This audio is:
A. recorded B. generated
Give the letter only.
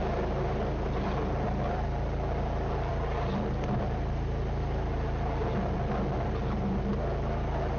A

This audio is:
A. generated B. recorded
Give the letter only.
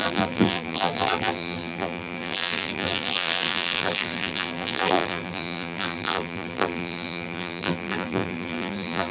A